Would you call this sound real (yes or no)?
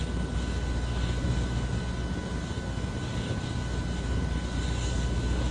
yes